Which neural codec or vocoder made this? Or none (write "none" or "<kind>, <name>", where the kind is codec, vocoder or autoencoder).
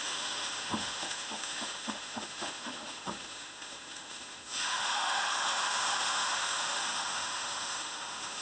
autoencoder, DAC-VAE